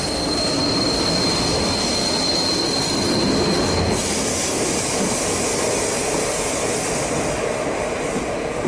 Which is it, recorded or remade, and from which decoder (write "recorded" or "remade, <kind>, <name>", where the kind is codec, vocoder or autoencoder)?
recorded